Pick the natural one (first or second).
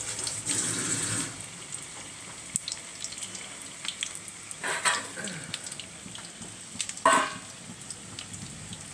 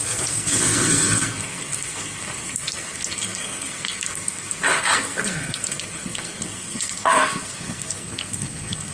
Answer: first